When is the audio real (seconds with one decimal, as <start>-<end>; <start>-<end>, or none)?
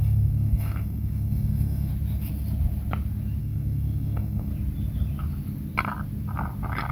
1.9-3.4; 4.5-6.9